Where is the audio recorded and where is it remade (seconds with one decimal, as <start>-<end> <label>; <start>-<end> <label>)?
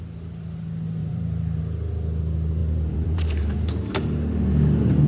0.0-1.0 recorded; 1.0-1.6 remade; 1.6-2.6 recorded; 2.6-3.8 remade; 3.8-5.1 recorded